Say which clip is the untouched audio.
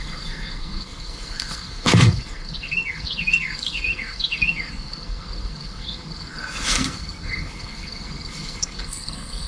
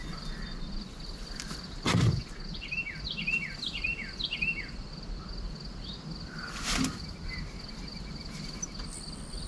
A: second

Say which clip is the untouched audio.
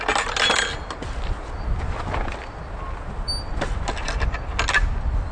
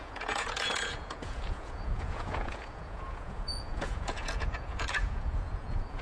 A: first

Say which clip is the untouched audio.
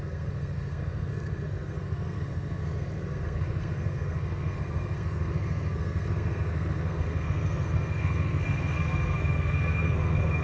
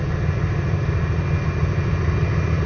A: second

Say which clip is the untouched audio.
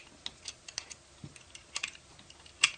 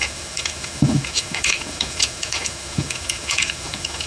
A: first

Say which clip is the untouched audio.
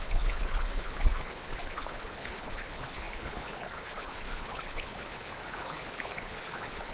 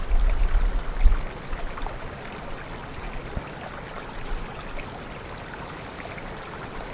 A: second